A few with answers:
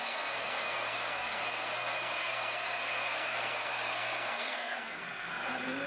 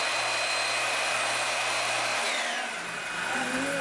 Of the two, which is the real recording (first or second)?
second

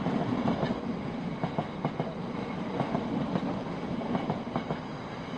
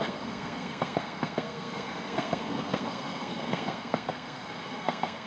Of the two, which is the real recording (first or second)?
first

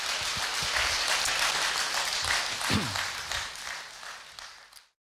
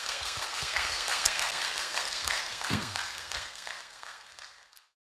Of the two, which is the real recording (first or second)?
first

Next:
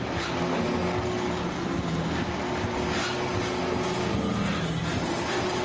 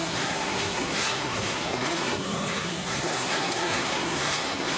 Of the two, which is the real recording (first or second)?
first